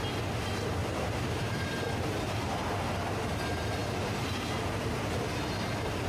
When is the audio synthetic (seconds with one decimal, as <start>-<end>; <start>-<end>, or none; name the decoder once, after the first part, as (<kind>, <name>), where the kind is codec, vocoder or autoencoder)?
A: 0.8-1.7 (vocoder, BigVGAN v2); 3.8-5.1

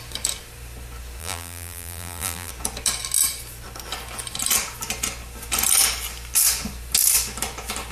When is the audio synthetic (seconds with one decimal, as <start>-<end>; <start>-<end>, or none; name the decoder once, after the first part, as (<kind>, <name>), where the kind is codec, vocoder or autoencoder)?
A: 1.2-2.5 (vocoder, BigVGAN v2)

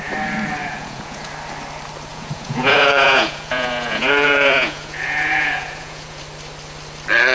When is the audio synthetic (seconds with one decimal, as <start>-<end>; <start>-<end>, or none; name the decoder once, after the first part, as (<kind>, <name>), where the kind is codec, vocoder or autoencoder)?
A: 0.6-1.3 (vocoder, Vocos); 2.1-6.2